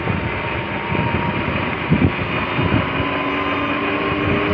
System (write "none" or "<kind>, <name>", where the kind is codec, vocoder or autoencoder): none